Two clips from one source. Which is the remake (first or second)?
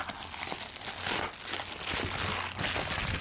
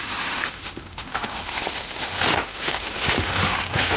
second